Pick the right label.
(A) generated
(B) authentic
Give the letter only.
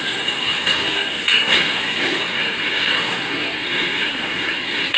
A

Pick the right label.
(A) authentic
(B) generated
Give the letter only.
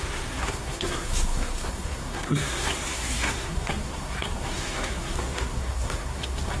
B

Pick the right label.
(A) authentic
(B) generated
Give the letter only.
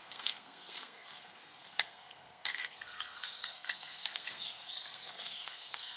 B